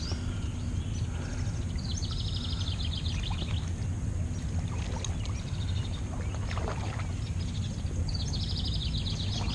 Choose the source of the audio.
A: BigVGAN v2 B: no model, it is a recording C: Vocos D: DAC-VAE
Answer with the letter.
B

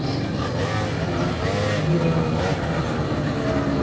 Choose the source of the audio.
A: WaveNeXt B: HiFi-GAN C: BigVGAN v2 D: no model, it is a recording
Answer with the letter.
D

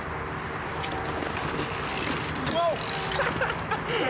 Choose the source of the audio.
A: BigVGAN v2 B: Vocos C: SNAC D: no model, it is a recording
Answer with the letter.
A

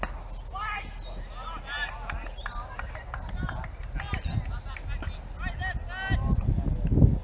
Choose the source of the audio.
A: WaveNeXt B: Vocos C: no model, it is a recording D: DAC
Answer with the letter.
C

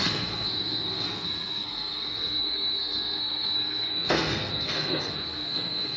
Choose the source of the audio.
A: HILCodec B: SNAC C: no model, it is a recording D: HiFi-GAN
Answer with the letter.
B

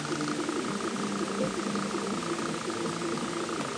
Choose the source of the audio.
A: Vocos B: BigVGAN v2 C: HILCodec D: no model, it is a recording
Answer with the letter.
D